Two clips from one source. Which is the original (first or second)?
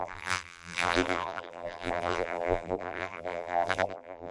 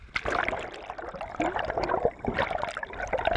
second